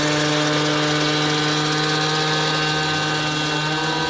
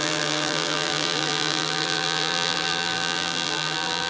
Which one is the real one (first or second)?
first